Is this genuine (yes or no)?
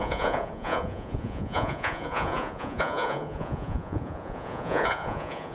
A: no